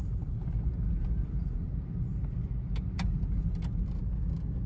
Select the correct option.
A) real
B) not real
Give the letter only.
A